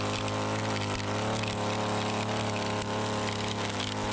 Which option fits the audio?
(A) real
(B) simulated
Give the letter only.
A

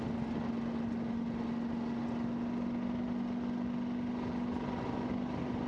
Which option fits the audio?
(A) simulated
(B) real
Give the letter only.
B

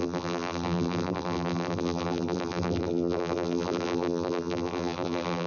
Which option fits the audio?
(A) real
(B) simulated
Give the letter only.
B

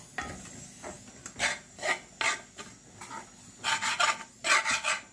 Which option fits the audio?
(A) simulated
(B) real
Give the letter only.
B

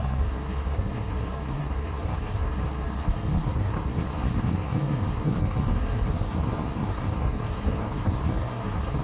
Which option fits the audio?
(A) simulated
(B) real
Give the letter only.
A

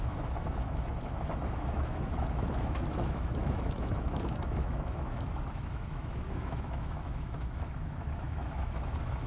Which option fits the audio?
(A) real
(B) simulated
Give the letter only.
B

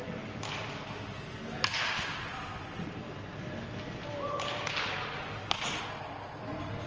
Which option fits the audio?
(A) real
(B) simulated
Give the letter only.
A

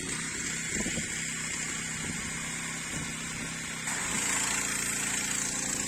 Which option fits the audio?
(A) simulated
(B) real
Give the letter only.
B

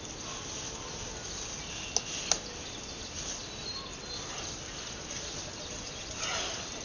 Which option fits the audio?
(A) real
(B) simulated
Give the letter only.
A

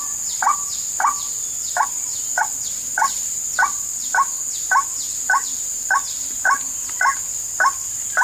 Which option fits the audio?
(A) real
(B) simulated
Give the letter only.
A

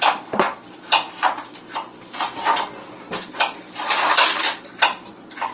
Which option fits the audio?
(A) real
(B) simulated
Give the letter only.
A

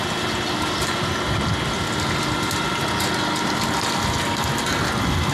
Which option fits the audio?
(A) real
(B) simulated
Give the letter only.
A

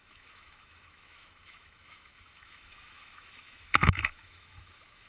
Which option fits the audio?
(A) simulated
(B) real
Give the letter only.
A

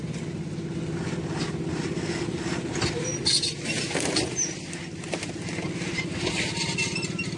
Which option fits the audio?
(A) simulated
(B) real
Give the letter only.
B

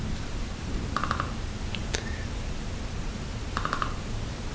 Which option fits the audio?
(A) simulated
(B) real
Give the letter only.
A